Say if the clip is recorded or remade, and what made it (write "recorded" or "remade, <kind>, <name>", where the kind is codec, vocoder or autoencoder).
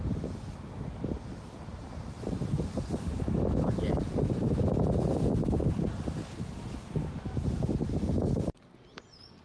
recorded